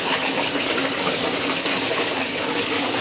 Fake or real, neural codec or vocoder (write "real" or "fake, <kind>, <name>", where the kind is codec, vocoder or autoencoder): fake, codec, DAC